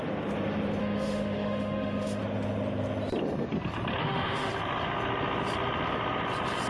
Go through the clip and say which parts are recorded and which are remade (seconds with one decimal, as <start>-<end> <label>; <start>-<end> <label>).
0.0-0.8 recorded; 0.8-2.2 remade; 2.2-4.0 recorded; 4.0-4.5 remade; 4.5-6.7 recorded